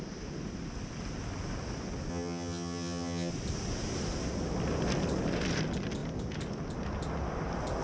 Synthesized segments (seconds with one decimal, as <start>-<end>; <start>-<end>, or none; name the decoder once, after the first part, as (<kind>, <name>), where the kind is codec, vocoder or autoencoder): 2.1-3.3 (vocoder, HiFi-GAN)